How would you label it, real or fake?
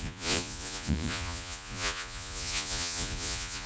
fake